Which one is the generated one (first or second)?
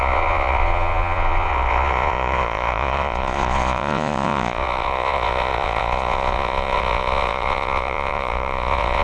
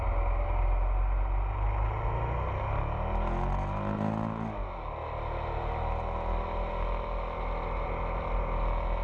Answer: first